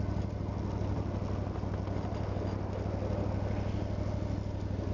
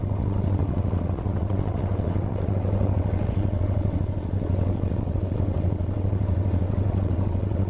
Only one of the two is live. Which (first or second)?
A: first